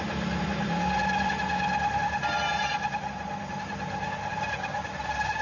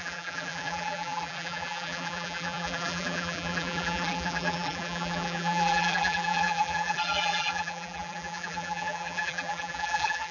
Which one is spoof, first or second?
second